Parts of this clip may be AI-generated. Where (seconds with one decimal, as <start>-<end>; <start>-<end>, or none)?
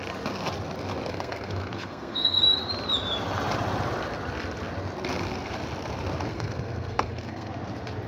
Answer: 1.1-2.4; 6.3-7.5